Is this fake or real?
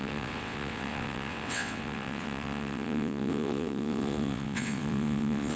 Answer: fake